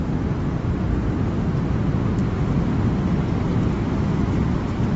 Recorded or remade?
recorded